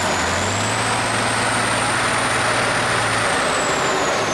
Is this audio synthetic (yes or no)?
no